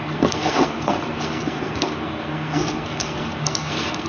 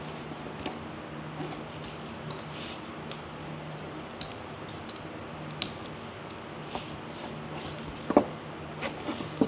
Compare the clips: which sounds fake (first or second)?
first